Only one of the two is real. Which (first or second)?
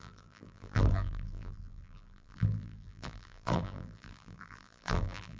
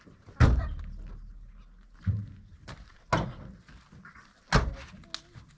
second